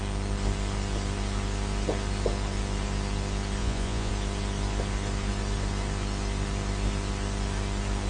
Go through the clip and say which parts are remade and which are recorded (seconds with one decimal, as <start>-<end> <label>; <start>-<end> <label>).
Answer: 0.0-3.6 recorded; 3.6-4.1 remade; 4.1-8.1 recorded

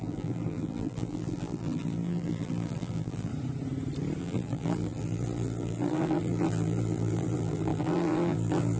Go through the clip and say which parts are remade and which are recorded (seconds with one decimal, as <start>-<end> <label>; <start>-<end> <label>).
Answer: 0.0-3.3 remade; 3.3-4.2 recorded; 4.2-8.8 remade